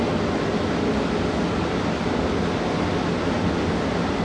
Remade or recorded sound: recorded